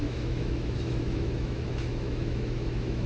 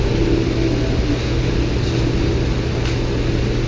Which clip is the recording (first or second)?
second